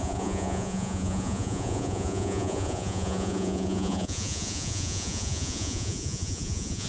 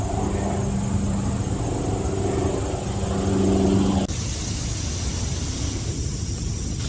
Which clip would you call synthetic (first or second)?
first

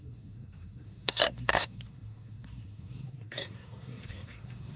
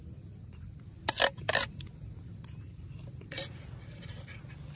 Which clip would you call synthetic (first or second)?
first